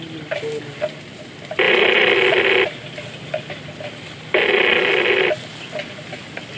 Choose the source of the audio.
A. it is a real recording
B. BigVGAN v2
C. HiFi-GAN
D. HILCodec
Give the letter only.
A